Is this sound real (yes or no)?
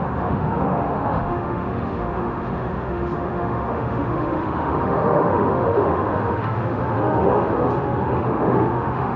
no